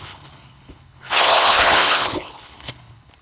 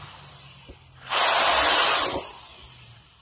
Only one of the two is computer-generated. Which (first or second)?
first